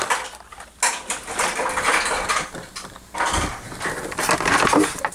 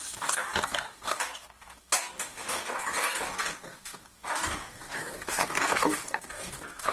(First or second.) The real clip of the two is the first